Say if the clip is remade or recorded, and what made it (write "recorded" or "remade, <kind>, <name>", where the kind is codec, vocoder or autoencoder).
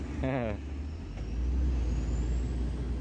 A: recorded